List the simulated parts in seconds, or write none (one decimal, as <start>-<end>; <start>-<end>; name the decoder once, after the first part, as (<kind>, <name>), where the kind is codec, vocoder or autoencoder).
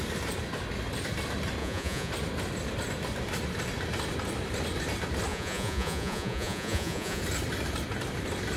1.6-2.1 (vocoder, Vocos); 5.3-7.2